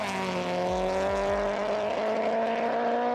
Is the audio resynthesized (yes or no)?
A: no